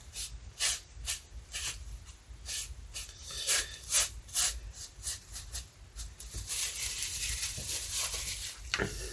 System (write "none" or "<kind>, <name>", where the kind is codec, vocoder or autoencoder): vocoder, BigVGAN v2